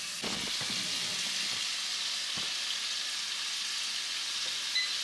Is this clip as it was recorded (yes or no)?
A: yes